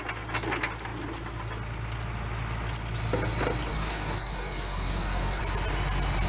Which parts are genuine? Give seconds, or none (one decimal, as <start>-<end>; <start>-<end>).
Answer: 0.0-3.7; 5.4-6.3